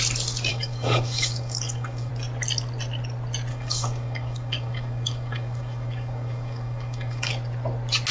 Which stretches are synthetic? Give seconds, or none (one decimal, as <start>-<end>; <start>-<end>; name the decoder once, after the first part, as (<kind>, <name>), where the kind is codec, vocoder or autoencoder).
0.5-2.1 (codec, DAC); 3.5-7.3

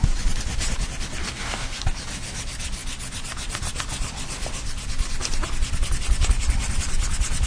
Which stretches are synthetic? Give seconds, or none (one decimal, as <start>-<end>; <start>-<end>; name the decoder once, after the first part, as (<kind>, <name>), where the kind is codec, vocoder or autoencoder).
1.2-1.8 (codec, DAC)

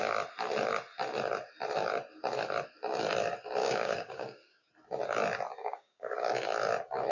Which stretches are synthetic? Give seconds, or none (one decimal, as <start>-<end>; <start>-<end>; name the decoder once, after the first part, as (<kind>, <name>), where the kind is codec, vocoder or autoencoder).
3.6-4.7 (codec, DAC); 5.6-6.3